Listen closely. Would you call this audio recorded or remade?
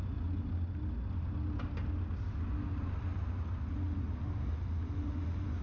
recorded